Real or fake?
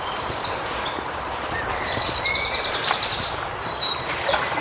fake